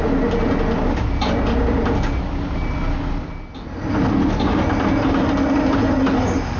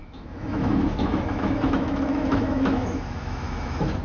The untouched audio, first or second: first